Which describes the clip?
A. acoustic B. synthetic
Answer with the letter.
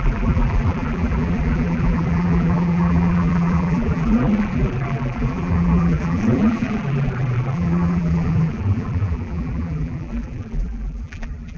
B